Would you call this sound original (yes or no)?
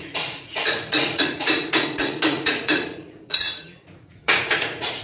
no